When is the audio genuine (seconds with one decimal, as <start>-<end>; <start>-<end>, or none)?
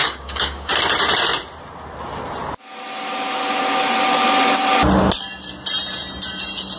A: 0.7-6.8